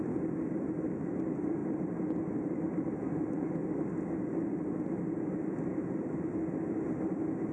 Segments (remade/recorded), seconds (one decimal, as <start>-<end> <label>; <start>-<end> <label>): 0.0-1.6 remade; 1.6-2.6 recorded; 2.6-3.6 remade; 3.6-7.0 recorded; 7.0-7.5 remade